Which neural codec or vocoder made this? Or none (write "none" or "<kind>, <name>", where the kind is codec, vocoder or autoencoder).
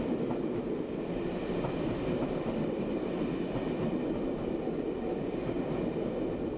none